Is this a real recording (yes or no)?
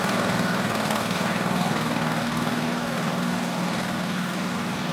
no